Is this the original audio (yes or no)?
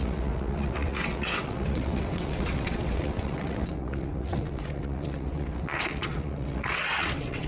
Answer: no